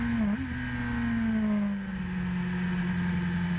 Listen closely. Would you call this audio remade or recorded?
recorded